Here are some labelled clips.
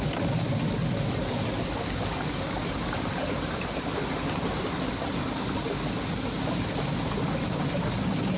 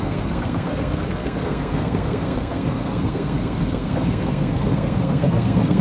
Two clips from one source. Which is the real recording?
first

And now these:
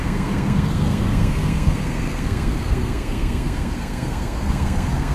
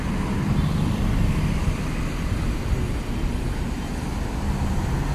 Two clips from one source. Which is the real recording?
second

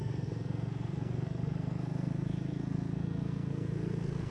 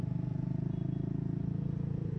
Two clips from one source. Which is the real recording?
second